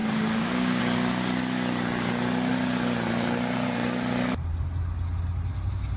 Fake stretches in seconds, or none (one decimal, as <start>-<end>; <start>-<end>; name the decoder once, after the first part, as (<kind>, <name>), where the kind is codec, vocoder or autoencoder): 0.0-0.8 (codec, DAC)